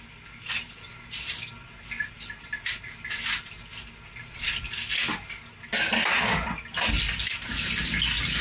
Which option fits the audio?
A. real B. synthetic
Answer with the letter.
A